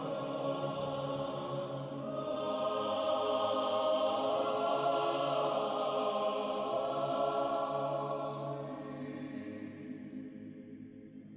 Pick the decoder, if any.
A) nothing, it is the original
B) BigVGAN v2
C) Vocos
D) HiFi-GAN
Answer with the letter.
A